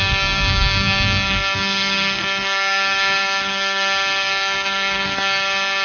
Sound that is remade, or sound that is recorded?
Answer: remade